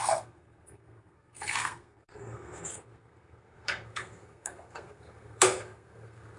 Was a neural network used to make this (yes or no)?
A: yes